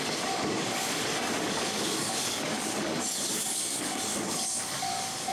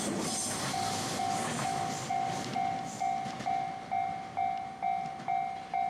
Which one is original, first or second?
second